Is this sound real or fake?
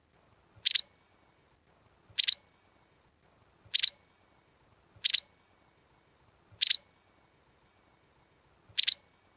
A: real